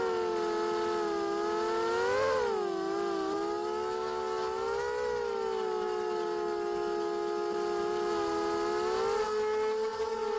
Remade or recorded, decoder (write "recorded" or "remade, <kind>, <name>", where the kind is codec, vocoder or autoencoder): recorded